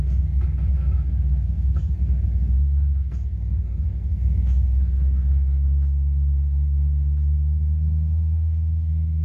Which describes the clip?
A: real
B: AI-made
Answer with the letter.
B